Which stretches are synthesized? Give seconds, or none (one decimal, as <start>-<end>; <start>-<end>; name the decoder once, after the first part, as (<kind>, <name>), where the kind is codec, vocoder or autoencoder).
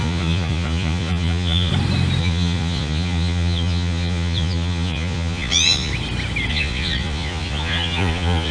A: 0.0-1.7 (vocoder, Vocos); 2.2-5.9; 6.5-8.5